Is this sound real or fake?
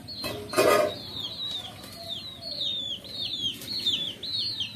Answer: real